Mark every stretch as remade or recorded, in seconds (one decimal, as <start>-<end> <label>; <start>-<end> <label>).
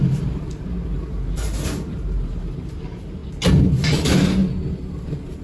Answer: 0.0-3.2 remade; 3.2-3.9 recorded; 3.9-4.4 remade; 4.4-5.0 recorded; 5.0-5.4 remade